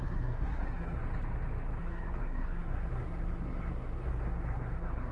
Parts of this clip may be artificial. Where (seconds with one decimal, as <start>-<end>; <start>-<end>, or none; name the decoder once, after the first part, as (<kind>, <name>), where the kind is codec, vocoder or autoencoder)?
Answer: 0.0-1.0 (codec, SNAC); 1.8-5.1